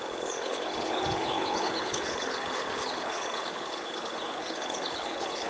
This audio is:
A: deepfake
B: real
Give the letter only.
A